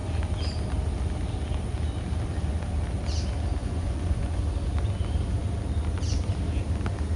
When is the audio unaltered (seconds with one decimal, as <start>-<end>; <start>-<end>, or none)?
0.0-3.6; 4.5-7.2